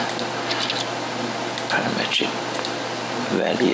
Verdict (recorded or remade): recorded